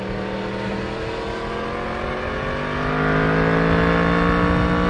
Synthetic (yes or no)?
no